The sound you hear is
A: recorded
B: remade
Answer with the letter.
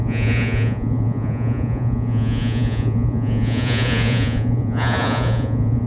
B